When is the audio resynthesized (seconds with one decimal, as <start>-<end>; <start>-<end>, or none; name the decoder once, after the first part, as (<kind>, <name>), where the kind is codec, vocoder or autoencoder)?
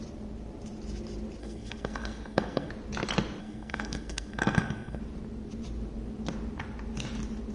1.4-2.7 (codec, SNAC); 3.4-5.0